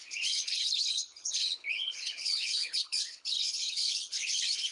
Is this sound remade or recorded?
remade